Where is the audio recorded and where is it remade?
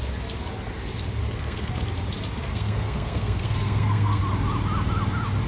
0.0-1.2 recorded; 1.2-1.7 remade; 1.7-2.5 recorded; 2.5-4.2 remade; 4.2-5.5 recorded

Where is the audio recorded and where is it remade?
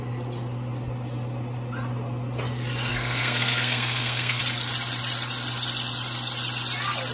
0.0-2.9 recorded; 2.9-4.4 remade; 4.4-7.1 recorded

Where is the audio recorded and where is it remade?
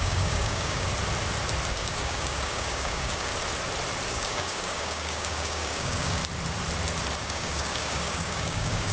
0.0-0.9 remade; 0.9-1.7 recorded; 1.7-3.3 remade; 3.3-4.1 recorded; 4.1-6.2 remade; 6.2-7.2 recorded; 7.2-8.9 remade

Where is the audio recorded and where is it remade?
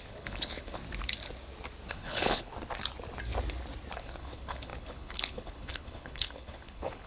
0.0-0.8 remade; 0.8-1.9 recorded; 1.9-2.5 remade; 2.5-3.9 recorded; 3.9-7.1 remade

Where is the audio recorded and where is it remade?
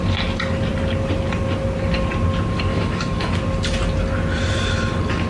0.0-2.7 recorded; 2.7-3.3 remade; 3.3-5.3 recorded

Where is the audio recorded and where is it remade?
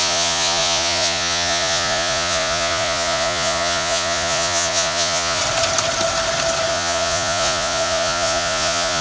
0.0-5.4 remade; 5.4-6.7 recorded; 6.7-9.0 remade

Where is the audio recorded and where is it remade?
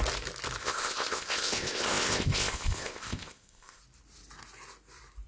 0.0-0.6 recorded; 0.6-3.8 remade; 3.8-5.3 recorded